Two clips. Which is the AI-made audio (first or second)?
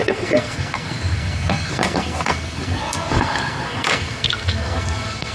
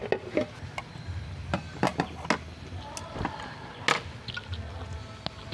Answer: first